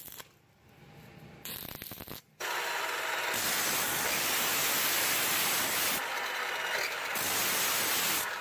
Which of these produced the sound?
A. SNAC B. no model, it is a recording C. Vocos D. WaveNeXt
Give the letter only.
B